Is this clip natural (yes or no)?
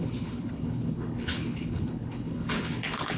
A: no